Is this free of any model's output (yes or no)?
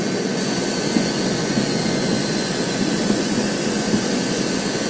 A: no